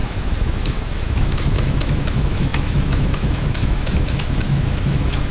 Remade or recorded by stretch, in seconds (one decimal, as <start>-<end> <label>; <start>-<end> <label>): 0.0-5.3 remade